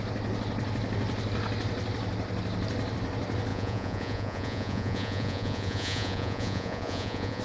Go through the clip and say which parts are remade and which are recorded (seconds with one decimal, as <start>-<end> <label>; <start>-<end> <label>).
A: 0.0-3.5 recorded; 3.5-7.4 remade